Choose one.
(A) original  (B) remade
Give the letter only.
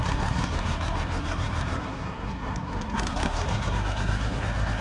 B